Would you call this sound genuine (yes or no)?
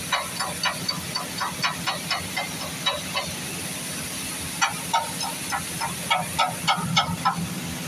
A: yes